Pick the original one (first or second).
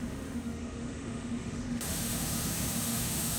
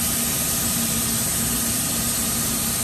second